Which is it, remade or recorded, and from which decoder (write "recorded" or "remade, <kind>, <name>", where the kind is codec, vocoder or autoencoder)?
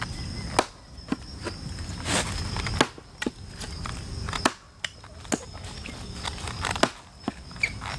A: recorded